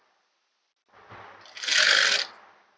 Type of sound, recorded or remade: recorded